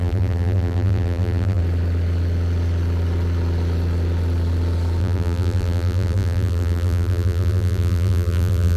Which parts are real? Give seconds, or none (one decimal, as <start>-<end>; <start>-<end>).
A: 1.6-5.0